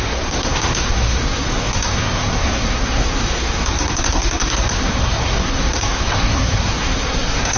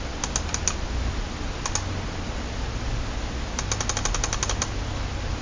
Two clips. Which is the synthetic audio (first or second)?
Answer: first